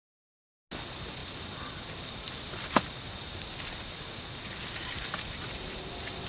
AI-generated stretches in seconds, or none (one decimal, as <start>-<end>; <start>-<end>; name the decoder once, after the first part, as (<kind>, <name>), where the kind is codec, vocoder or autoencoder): none